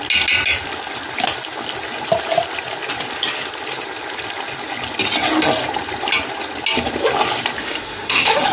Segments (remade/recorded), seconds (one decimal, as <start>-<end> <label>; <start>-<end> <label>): 0.0-7.6 recorded; 7.6-8.5 remade